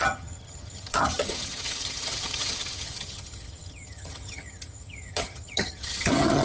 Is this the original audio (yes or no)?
no